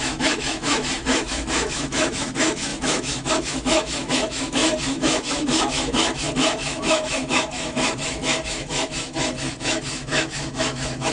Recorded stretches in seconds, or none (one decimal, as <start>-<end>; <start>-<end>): none